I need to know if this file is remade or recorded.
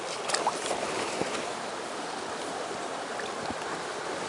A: remade